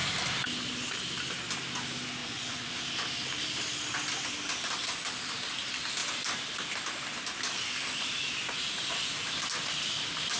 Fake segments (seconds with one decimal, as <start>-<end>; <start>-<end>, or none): 2.2-2.7